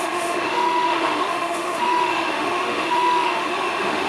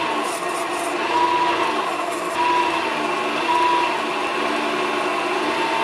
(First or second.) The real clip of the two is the second